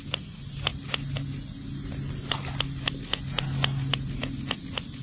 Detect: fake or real real